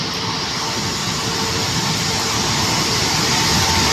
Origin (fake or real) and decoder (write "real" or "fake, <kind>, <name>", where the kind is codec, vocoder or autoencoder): real